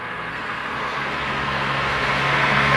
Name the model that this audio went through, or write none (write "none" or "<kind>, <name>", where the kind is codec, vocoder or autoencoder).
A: codec, SNAC